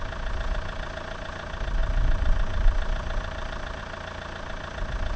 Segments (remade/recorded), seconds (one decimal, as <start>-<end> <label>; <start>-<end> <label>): 0.0-1.8 recorded; 1.8-3.8 remade; 3.8-5.2 recorded

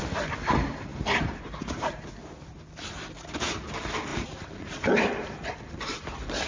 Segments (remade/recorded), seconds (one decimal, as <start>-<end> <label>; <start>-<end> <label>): 0.0-0.9 recorded; 0.9-1.4 remade; 1.4-4.1 recorded; 4.1-5.5 remade; 5.5-6.5 recorded

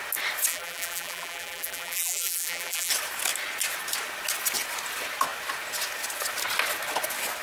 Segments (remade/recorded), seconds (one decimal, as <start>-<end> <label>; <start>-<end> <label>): 0.0-0.5 recorded; 0.5-2.9 remade; 2.9-7.4 recorded

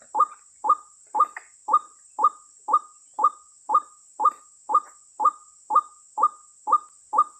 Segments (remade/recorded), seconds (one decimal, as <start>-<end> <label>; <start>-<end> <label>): 0.0-7.4 recorded

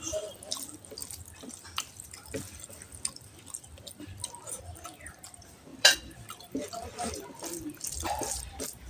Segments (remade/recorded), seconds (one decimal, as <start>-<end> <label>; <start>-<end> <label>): 0.0-1.0 recorded; 1.0-1.5 remade; 1.5-5.7 recorded; 5.7-8.5 remade; 8.5-8.9 recorded

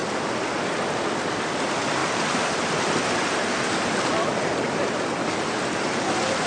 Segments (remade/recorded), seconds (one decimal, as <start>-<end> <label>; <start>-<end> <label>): 0.0-6.5 remade

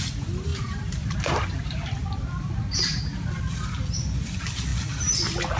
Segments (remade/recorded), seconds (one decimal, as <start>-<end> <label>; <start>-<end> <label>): 0.0-0.5 recorded; 0.5-3.4 remade; 3.4-5.6 recorded

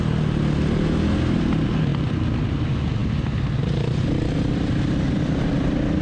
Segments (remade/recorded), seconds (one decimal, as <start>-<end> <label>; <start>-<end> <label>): 0.0-6.0 recorded